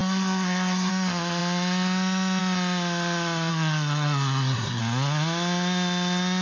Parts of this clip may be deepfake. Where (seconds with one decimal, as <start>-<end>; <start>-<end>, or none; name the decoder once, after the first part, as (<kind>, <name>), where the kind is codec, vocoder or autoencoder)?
0.0-0.9 (codec, SNAC); 3.5-4.8